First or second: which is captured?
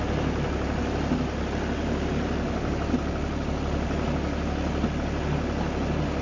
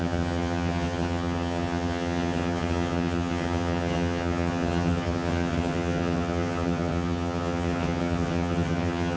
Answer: first